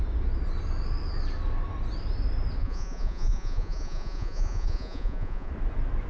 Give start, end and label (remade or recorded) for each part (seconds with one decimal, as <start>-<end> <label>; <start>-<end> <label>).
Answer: 0.0-2.6 recorded; 2.6-5.5 remade; 5.5-6.1 recorded